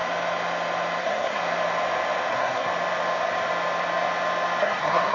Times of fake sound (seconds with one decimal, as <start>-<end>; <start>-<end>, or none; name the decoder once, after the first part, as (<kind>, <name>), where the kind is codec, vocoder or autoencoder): 1.0-1.4 (codec, SNAC); 2.3-2.7; 4.6-5.1